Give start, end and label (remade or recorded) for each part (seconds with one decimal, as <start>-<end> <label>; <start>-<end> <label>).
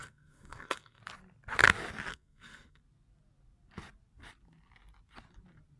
0.0-1.0 remade; 1.0-2.1 recorded; 2.1-2.8 remade; 2.8-5.8 recorded